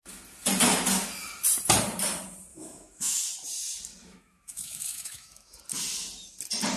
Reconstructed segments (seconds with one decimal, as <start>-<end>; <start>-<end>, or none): 2.5-3.2; 4.0-5.6